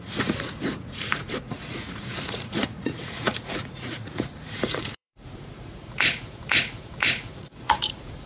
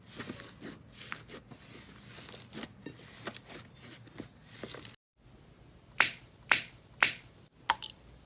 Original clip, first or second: second